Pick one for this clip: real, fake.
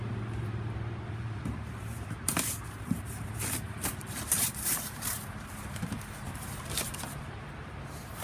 fake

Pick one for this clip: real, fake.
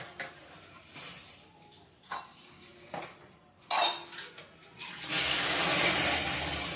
real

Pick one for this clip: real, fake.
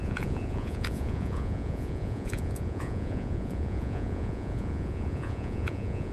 fake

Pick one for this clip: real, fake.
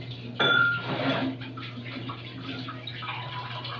fake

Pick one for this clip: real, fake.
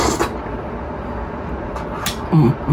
real